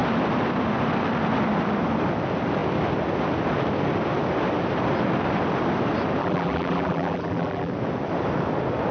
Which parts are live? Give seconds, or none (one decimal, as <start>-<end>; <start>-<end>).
0.0-6.2; 7.7-8.9